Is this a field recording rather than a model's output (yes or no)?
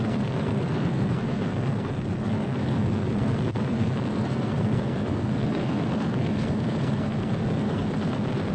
no